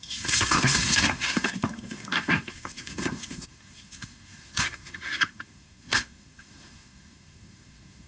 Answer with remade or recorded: remade